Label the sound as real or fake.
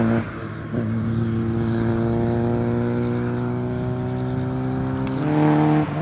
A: real